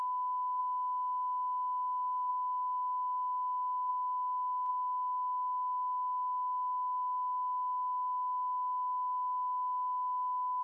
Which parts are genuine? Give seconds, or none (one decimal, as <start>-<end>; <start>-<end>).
3.9-4.7